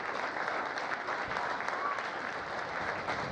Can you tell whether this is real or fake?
real